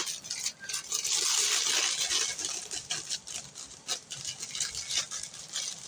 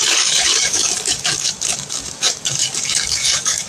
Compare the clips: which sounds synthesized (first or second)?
second